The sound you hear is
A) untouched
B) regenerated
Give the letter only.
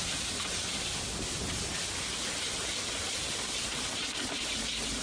A